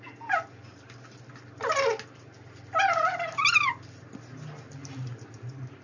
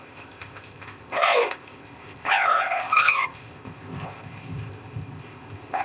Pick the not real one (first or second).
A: second